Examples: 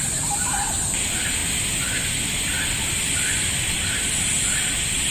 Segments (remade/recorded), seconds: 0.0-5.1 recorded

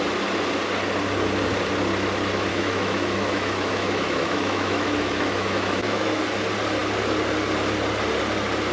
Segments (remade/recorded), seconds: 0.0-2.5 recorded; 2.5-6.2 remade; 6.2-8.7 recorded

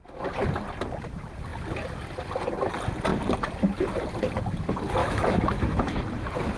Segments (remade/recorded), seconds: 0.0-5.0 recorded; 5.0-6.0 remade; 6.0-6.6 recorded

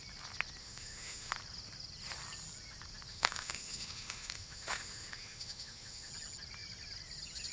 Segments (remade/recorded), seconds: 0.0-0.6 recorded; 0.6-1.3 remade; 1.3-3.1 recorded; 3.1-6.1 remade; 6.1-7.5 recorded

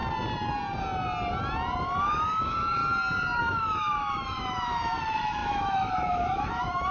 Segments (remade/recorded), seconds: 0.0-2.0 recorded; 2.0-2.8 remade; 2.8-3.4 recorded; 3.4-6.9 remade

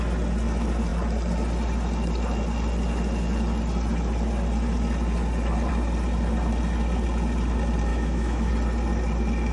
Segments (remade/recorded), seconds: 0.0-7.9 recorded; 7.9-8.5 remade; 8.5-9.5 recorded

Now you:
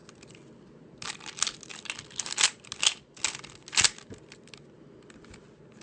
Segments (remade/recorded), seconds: 0.0-5.8 recorded